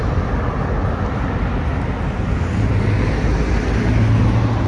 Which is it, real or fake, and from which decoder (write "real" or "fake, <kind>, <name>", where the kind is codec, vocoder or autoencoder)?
real